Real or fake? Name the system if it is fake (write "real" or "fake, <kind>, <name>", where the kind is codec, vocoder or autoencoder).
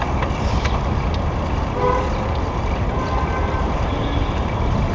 real